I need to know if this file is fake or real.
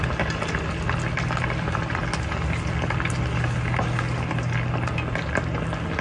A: real